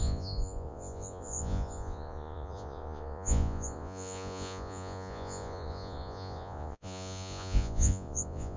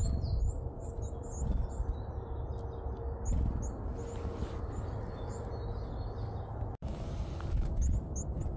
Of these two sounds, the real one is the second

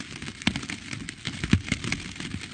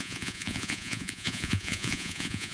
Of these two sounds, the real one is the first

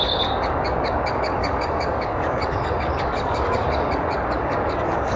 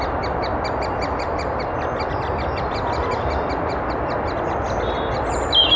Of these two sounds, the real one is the second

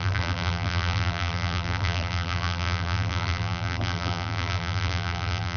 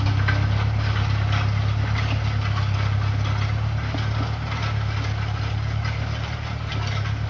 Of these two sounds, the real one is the second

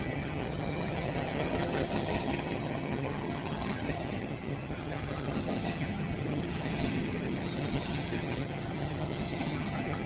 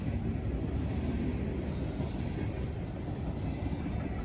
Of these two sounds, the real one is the second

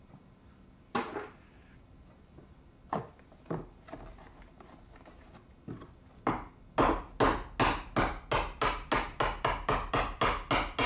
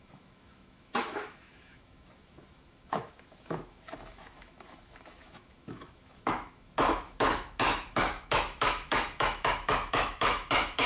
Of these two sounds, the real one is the first